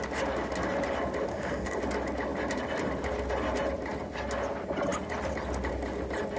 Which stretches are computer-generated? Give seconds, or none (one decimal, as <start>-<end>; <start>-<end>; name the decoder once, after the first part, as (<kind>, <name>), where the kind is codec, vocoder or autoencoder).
1.3-1.8 (codec, SNAC)